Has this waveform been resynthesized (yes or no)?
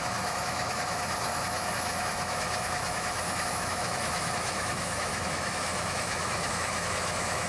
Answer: yes